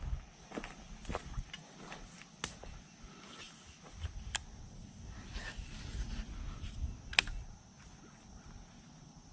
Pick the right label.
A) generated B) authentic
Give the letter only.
B